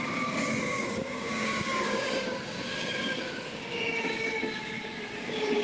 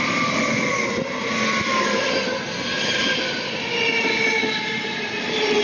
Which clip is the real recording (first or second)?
second